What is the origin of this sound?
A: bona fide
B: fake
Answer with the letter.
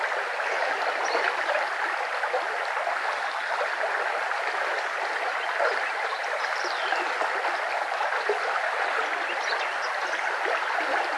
A